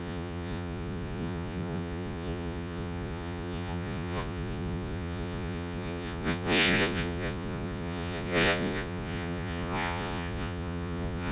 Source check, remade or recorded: remade